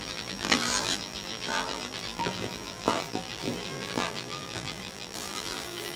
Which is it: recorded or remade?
remade